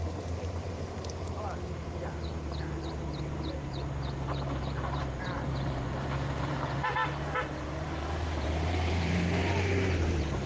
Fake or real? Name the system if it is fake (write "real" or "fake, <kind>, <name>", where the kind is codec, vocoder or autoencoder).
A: fake, vocoder, BigVGAN v2